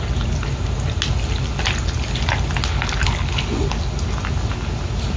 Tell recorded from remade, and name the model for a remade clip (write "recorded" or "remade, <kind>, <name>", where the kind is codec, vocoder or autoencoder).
recorded